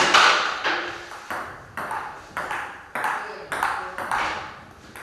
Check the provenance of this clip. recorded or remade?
recorded